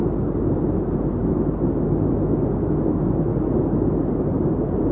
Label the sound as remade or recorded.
recorded